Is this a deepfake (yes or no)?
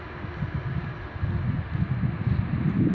no